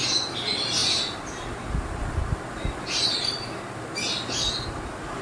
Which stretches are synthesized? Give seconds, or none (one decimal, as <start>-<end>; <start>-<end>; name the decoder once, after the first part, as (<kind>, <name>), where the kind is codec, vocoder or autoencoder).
none